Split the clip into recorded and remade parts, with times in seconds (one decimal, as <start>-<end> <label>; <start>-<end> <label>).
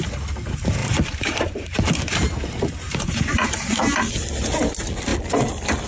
0.0-0.8 recorded; 0.8-4.1 remade; 4.1-5.9 recorded